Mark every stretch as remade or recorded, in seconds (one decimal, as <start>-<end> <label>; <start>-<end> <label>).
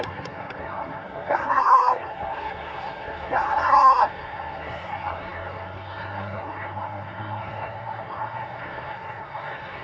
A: 0.0-9.8 remade